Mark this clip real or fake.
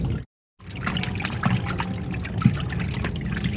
real